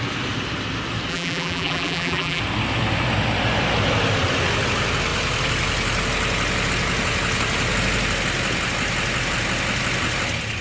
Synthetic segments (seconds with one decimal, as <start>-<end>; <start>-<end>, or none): 1.1-2.4